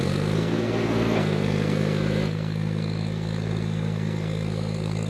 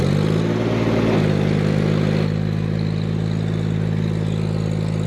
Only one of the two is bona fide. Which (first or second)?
second